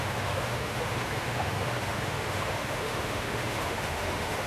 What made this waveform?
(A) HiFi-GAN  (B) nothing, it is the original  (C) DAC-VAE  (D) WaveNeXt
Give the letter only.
C